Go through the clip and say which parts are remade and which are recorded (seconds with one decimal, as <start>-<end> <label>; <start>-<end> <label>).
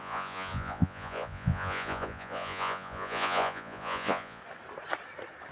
0.0-4.4 remade; 4.4-5.5 recorded